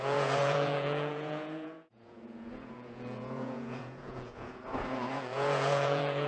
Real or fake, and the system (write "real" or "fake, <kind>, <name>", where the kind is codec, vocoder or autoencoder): fake, vocoder, Vocos